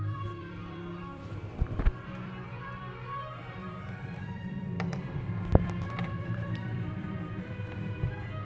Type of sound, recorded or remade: remade